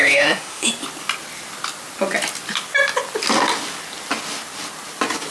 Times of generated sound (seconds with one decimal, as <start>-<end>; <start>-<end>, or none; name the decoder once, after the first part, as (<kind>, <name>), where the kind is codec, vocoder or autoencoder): 0.0-0.7 (autoencoder, DAC-VAE)